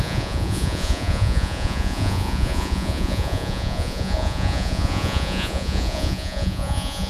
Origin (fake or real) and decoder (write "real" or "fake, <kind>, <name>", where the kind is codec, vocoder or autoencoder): fake, vocoder, Vocos